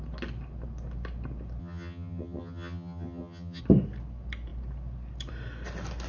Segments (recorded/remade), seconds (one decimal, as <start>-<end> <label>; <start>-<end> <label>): 0.0-1.6 recorded; 1.6-3.6 remade; 3.6-6.1 recorded